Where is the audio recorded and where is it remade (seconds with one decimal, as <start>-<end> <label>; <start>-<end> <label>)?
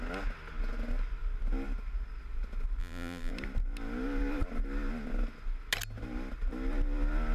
0.0-2.8 recorded; 2.8-3.3 remade; 3.3-7.3 recorded